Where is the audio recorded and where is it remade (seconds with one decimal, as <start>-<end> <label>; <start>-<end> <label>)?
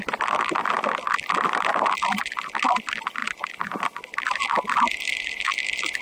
0.0-0.6 remade; 0.6-1.2 recorded; 1.2-3.2 remade; 3.2-4.2 recorded; 4.2-6.0 remade